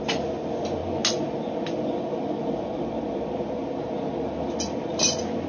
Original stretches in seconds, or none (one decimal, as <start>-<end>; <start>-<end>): 0.0-5.5

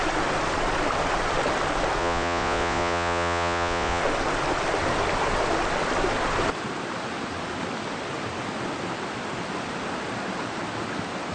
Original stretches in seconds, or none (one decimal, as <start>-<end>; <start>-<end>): 0.0-2.0; 4.0-11.3